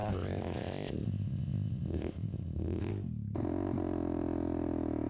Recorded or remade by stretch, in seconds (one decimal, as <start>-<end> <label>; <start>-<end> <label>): 0.0-2.9 remade; 2.9-5.1 recorded